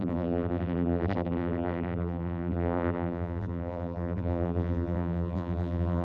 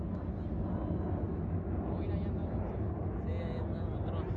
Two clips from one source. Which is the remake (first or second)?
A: first